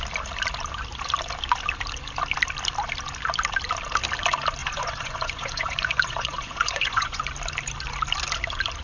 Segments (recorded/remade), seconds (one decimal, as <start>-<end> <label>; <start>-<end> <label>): 0.0-4.6 recorded; 4.6-7.2 remade; 7.2-8.8 recorded